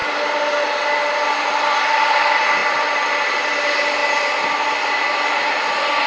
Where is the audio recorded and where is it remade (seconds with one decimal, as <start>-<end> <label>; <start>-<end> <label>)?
0.0-6.1 recorded